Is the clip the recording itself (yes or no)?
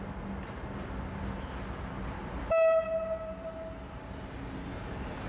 yes